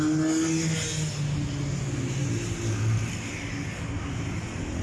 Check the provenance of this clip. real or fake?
real